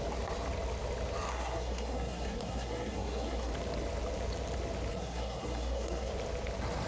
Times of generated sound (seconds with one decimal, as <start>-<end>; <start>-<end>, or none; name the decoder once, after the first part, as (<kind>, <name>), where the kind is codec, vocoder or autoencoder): 1.3-3.5 (codec, SNAC); 4.9-6.1